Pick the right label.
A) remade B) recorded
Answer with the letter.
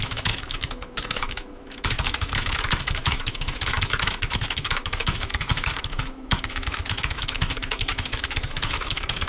A